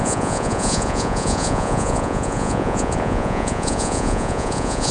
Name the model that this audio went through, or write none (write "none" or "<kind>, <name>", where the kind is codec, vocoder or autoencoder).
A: vocoder, Vocos